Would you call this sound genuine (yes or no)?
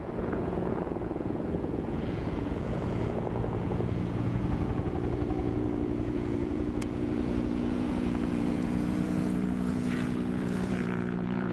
no